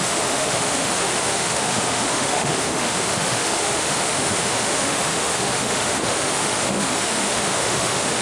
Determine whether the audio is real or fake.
fake